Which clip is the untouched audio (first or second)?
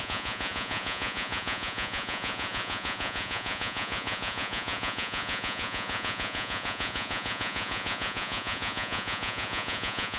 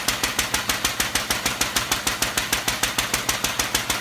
second